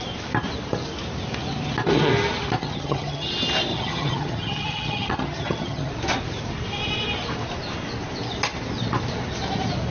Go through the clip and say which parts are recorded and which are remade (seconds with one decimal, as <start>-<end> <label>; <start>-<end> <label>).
0.0-2.6 recorded; 2.6-3.3 remade; 3.3-3.7 recorded; 3.7-5.9 remade; 5.9-9.9 recorded